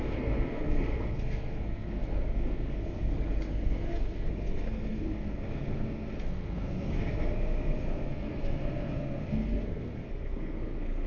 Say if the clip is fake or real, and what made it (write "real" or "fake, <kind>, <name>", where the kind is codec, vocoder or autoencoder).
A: fake, codec, SNAC